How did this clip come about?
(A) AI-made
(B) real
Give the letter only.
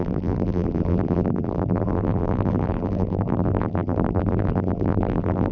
A